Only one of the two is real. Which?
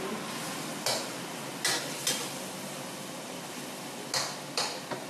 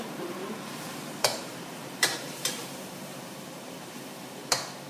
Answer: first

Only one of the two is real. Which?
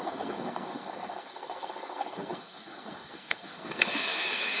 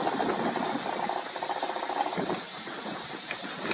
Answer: second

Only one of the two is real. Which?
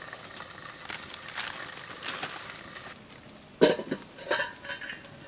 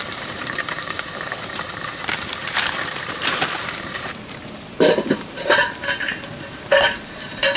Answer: first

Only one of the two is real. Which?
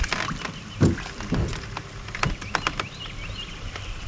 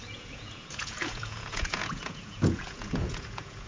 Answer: first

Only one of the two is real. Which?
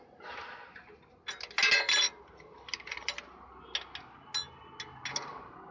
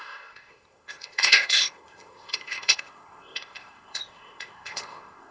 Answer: first